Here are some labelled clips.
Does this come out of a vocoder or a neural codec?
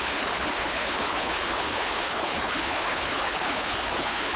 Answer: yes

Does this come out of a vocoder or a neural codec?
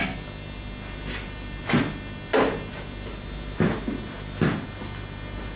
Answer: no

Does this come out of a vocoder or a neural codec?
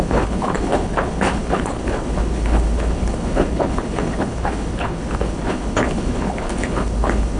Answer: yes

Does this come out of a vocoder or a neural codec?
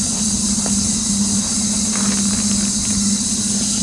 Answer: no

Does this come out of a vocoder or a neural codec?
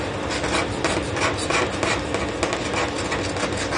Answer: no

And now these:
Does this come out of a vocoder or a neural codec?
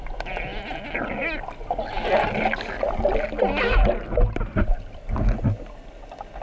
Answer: no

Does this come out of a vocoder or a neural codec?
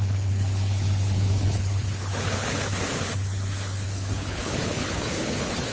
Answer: yes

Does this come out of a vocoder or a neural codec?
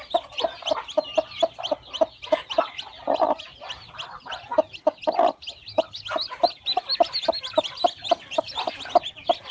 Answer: no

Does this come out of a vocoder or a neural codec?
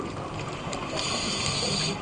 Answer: no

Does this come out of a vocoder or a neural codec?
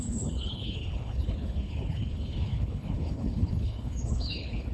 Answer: yes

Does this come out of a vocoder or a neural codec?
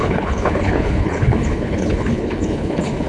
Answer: yes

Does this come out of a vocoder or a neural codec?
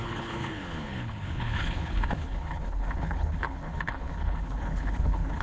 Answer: yes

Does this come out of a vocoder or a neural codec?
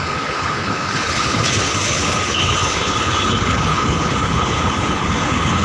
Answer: yes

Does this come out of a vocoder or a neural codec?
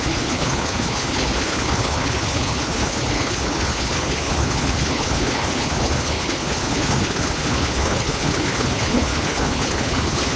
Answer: yes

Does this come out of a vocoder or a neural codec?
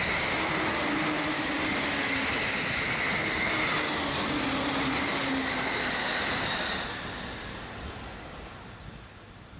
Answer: no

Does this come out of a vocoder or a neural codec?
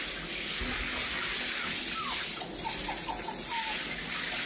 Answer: no